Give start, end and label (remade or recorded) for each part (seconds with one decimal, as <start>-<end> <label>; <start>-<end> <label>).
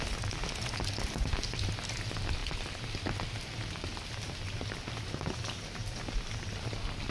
0.0-7.1 recorded